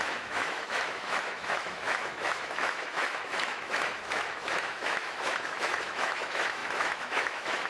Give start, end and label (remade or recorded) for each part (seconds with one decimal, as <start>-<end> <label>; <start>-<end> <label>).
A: 0.0-7.7 remade